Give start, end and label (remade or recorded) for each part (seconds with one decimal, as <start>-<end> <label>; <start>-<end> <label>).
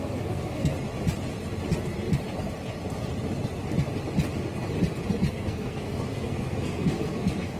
0.0-0.7 remade; 0.7-5.3 recorded; 5.3-7.6 remade